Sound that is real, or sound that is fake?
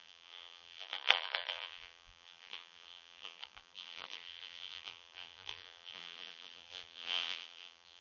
fake